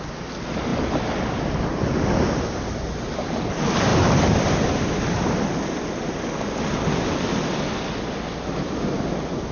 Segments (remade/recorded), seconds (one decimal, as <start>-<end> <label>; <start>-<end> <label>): 0.0-9.5 recorded